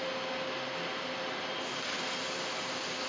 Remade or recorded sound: recorded